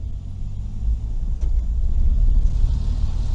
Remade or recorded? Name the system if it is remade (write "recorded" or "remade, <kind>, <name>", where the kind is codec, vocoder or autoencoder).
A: recorded